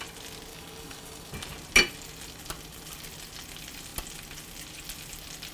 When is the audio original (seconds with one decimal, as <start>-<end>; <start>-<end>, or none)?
0.0-0.5; 1.3-5.5